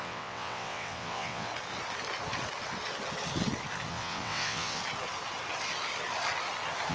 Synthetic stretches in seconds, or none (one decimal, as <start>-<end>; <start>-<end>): 0.0-1.5; 3.9-4.8